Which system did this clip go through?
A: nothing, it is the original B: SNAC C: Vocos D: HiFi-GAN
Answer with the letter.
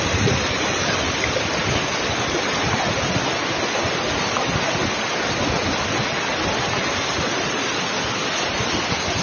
A